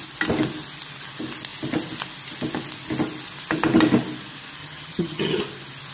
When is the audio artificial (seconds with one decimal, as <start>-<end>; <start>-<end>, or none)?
4.6-5.4